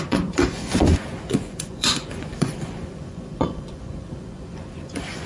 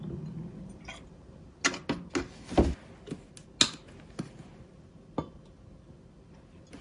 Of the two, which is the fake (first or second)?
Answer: first